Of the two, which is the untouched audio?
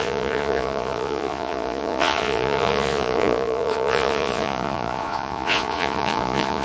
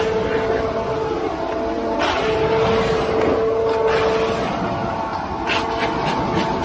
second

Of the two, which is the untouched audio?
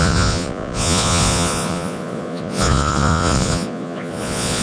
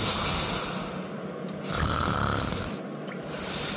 second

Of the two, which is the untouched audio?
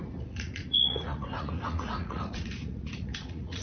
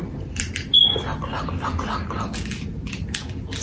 second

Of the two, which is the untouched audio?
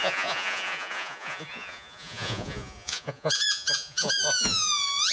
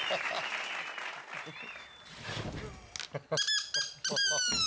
second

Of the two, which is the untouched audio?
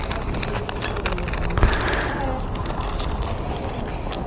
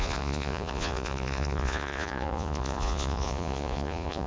first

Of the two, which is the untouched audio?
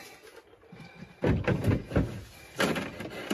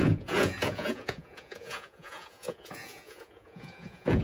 first